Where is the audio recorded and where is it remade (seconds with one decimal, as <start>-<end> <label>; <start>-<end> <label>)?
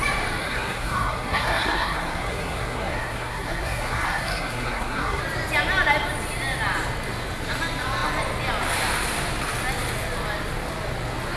0.0-0.4 recorded; 0.4-5.2 remade; 5.2-11.4 recorded